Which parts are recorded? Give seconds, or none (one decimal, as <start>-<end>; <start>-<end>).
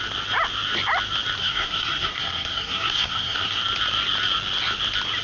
0.0-1.4; 3.6-5.2